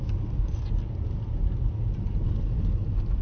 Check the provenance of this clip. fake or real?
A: real